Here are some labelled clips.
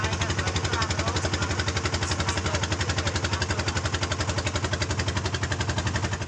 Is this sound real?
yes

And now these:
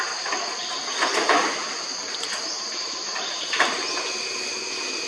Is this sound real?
yes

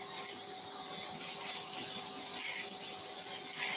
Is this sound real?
yes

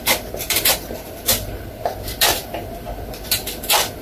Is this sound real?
no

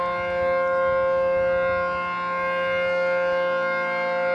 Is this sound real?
yes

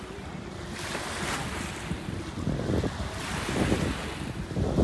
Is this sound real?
yes